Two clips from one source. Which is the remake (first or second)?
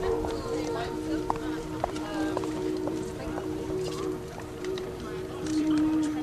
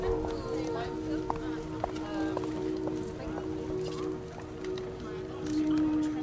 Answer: first